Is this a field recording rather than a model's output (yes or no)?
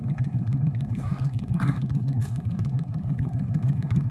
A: no